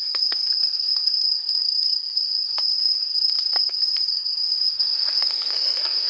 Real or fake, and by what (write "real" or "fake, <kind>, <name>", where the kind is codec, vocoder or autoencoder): fake, codec, SNAC